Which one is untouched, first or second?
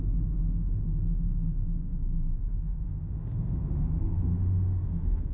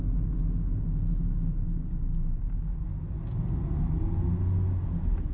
second